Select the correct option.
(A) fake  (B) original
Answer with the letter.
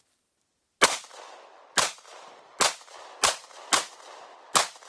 B